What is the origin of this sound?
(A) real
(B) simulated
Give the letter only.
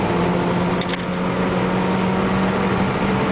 A